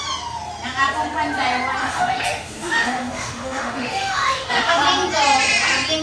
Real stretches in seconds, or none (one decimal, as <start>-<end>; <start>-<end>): 0.0-1.8; 4.8-6.0